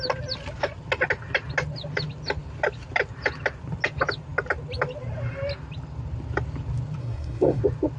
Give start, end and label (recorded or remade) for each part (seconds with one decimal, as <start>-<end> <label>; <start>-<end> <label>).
0.0-7.0 recorded; 7.0-7.6 remade; 7.6-8.0 recorded